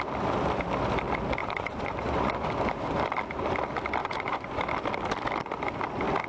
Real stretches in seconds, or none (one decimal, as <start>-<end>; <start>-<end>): 0.0-1.4; 2.5-4.0; 4.6-6.3